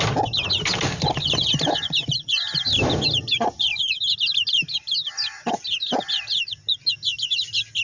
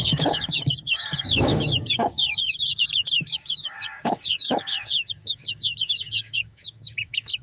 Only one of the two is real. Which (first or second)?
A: first